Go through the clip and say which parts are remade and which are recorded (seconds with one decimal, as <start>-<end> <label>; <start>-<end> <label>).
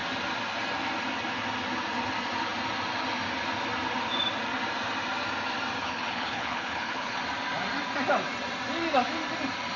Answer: 0.0-5.8 recorded; 5.8-7.2 remade; 7.2-9.8 recorded